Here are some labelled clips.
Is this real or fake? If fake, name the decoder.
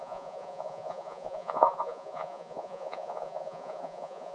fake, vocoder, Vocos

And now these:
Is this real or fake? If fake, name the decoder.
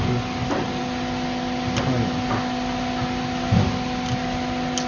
real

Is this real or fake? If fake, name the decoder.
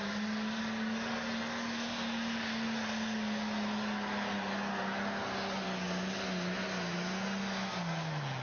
real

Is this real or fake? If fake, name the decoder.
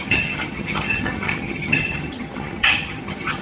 fake, vocoder, HiFi-GAN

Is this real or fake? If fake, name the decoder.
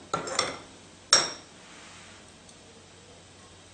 real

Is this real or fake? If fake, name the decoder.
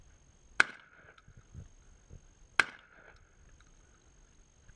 real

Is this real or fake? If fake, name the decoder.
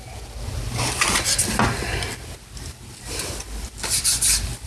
real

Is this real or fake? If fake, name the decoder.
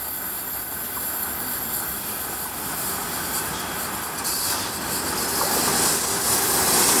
real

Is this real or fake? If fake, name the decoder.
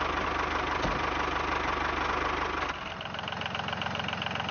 real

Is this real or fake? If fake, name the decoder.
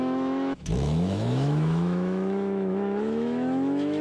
fake, autoencoder, DAC-VAE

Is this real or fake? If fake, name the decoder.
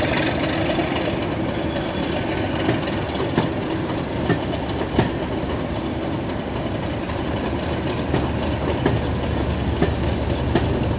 real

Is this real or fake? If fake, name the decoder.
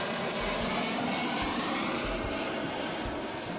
real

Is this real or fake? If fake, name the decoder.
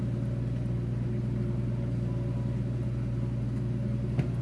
real